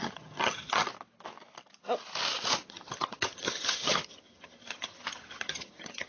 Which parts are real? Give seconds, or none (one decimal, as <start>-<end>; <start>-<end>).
0.9-2.7